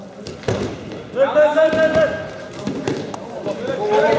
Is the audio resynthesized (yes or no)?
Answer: no